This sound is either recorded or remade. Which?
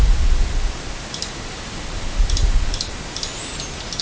recorded